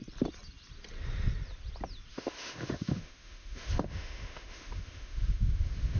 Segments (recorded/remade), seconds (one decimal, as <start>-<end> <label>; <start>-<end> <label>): 0.0-2.1 recorded; 2.1-6.0 remade